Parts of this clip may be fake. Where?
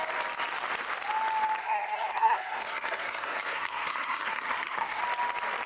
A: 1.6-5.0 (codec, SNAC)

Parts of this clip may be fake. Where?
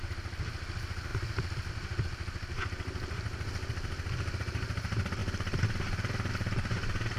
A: none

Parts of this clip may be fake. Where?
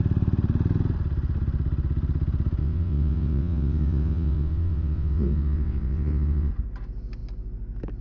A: 2.6-6.5 (vocoder, WaveNeXt)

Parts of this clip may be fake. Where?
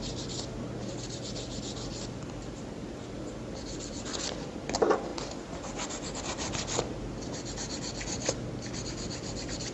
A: none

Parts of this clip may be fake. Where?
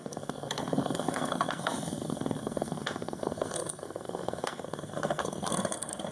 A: 0.0-6.1 (codec, SNAC)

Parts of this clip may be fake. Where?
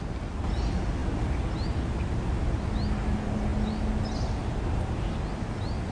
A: none